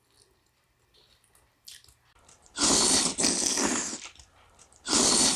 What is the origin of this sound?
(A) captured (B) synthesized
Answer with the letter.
A